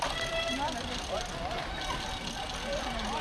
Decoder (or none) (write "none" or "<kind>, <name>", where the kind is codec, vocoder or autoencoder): none